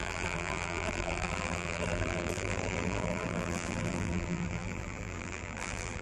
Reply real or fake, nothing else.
fake